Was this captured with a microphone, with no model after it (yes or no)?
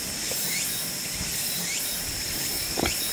yes